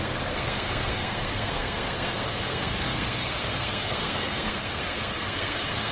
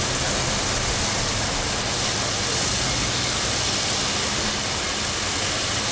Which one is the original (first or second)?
second